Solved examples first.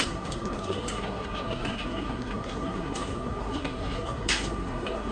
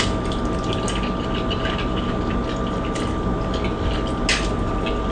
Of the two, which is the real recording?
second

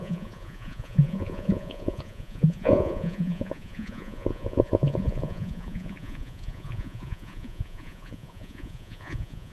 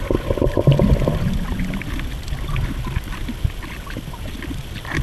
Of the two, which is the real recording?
second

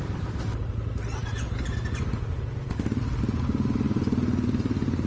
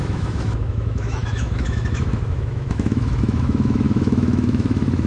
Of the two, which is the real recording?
first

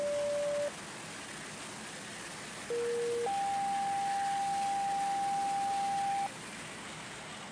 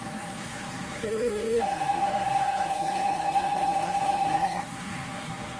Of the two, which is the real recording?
first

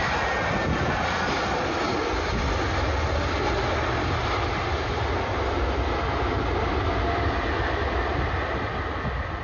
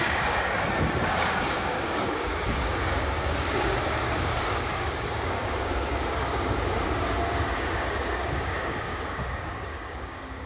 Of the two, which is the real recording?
first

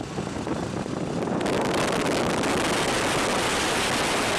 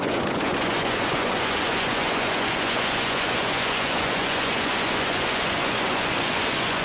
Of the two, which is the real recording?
first